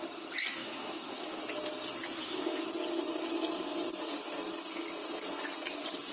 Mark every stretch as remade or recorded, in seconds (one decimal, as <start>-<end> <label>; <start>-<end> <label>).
0.0-0.6 recorded; 0.6-1.4 remade; 1.4-2.2 recorded; 2.2-2.7 remade; 2.7-6.1 recorded

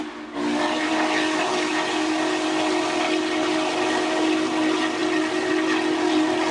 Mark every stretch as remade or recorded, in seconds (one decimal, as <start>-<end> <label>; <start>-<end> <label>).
0.0-6.5 recorded

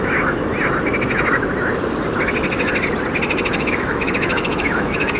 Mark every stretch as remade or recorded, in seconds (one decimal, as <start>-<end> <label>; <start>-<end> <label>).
0.0-0.5 remade; 0.5-3.6 recorded; 3.6-5.2 remade

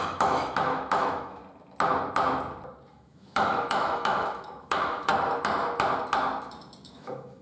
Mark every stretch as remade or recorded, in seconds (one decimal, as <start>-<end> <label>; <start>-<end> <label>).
0.0-1.4 remade; 1.4-2.9 recorded; 2.9-5.1 remade; 5.1-6.8 recorded; 6.8-7.4 remade

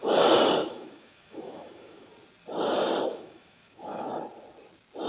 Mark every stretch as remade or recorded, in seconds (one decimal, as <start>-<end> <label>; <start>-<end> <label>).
0.0-0.6 recorded; 0.6-2.1 remade; 2.1-3.1 recorded; 3.1-4.1 remade; 4.1-5.1 recorded

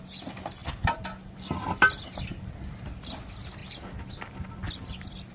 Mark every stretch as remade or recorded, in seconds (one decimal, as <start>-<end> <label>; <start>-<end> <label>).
0.0-5.3 recorded